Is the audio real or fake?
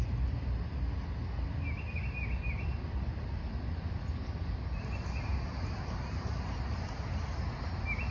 real